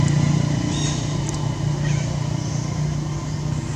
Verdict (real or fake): real